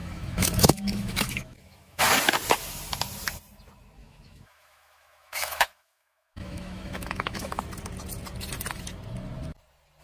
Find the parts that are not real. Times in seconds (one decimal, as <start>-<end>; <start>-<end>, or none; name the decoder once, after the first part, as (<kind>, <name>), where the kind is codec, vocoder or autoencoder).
0.0-2.0 (autoencoder, DAC-VAE); 4.0-7.6